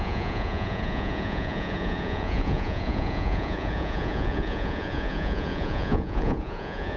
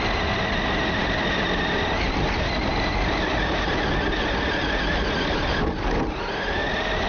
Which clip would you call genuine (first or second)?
second